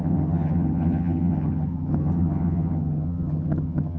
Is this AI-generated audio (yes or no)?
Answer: yes